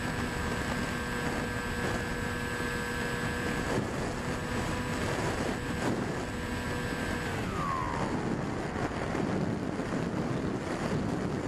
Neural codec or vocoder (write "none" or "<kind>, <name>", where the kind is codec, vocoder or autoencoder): none